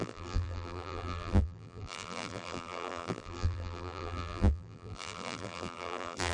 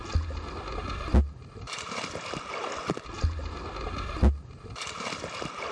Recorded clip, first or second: second